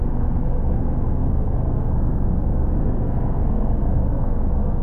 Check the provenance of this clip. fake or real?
fake